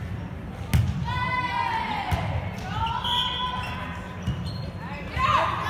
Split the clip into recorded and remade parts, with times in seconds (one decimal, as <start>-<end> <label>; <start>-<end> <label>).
0.0-5.7 recorded